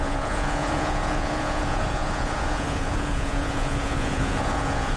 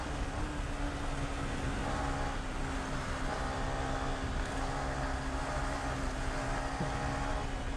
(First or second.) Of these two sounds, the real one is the second